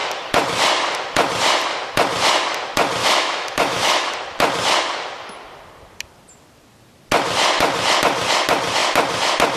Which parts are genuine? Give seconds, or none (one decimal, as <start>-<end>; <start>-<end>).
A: 0.0-3.0; 4.1-9.6

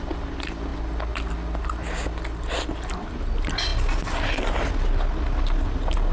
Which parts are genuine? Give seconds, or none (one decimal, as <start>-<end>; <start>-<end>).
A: 0.0-6.1

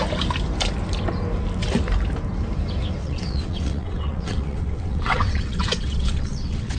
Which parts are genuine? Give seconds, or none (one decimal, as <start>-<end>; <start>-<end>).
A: 0.0-3.0

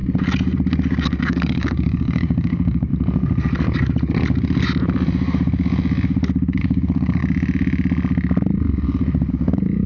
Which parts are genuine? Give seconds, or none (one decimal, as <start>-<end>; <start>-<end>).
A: 0.0-1.2; 2.9-6.6; 7.2-9.3